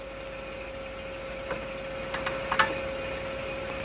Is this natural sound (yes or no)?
yes